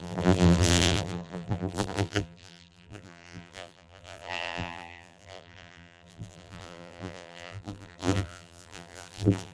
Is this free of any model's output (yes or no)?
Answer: no